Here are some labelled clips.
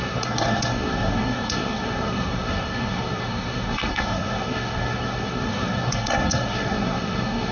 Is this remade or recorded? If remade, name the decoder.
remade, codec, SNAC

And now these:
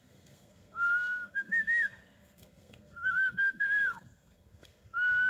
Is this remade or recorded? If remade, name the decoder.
remade, codec, SNAC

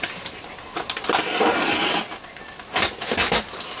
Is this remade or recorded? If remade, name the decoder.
recorded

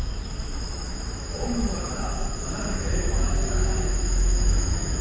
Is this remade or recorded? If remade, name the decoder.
remade, autoencoder, DAC-VAE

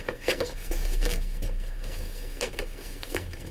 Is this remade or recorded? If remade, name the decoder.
remade, codec, SNAC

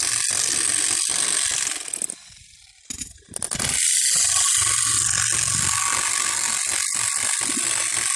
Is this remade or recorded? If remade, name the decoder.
recorded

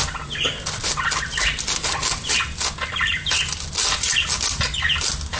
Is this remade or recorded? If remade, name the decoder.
recorded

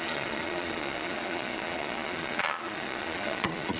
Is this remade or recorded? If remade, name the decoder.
remade, vocoder, Vocos